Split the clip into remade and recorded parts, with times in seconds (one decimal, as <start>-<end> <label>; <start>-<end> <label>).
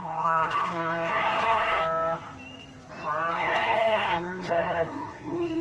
0.0-1.8 remade; 1.8-3.3 recorded; 3.3-5.6 remade